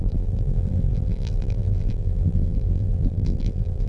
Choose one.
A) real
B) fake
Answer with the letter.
B